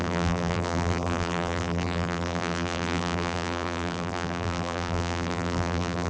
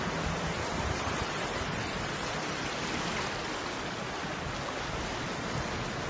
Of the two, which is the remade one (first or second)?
first